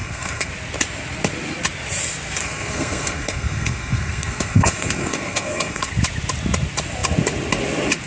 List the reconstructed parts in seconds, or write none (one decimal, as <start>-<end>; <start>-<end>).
0.0-0.5; 2.4-5.9